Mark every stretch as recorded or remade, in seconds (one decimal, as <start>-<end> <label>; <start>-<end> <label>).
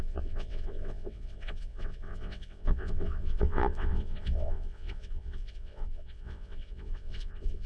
0.0-7.7 remade